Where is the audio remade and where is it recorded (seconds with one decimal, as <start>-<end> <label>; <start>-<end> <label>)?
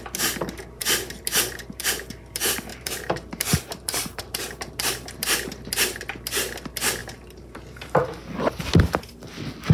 0.0-2.7 recorded; 2.7-5.2 remade; 5.2-7.0 recorded; 7.0-8.1 remade; 8.1-9.7 recorded